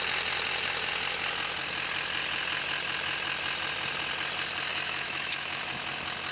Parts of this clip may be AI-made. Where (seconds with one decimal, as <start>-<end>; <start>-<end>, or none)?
4.7-5.6